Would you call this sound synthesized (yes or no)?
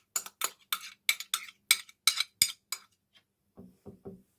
no